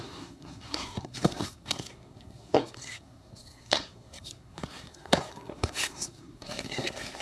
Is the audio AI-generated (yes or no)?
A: yes